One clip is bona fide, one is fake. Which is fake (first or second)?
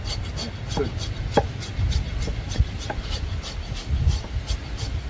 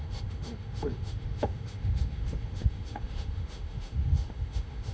second